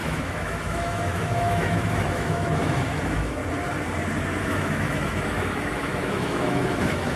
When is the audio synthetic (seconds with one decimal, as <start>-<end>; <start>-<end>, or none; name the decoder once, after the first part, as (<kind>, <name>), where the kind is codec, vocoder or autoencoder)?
0.0-3.4 (autoencoder, DAC-VAE); 4.4-7.2